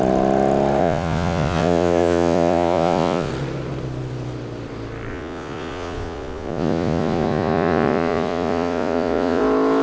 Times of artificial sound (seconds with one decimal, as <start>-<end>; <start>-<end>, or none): 0.8-3.3; 5.1-9.4